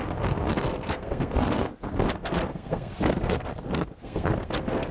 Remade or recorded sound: remade